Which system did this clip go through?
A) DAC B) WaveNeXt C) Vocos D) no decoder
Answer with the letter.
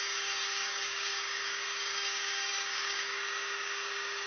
A